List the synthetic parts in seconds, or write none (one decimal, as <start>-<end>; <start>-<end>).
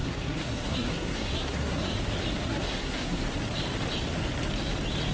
0.0-1.9; 2.4-3.2